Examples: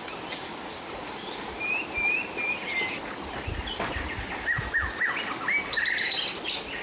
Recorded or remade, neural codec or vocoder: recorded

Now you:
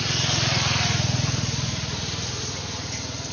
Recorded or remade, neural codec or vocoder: recorded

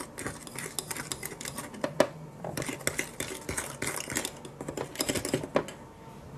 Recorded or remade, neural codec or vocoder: recorded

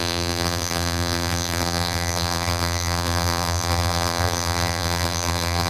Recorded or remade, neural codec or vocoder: remade, vocoder, BigVGAN v2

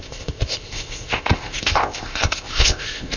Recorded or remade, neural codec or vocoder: remade, codec, ZipCodec